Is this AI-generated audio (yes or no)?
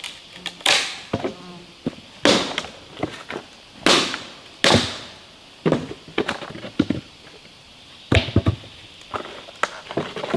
no